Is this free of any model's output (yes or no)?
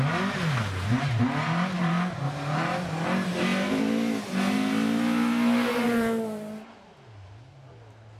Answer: yes